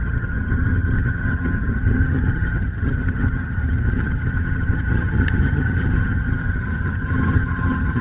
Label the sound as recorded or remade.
remade